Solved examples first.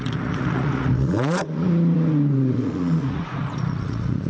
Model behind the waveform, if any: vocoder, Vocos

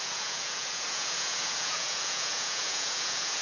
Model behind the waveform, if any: vocoder, Vocos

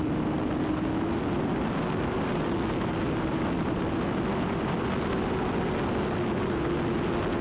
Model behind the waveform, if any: none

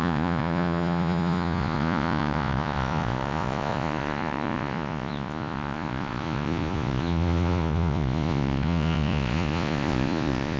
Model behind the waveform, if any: vocoder, Vocos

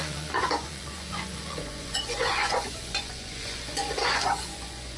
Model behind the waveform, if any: vocoder, Vocos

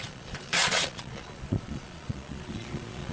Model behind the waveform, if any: vocoder, Vocos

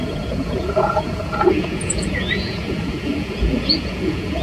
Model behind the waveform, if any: vocoder, Vocos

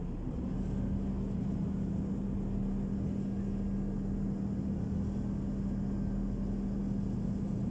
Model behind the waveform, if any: none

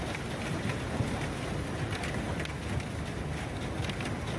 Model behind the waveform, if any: none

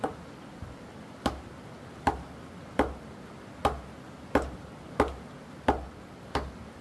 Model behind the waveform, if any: none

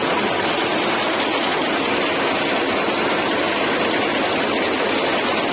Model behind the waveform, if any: none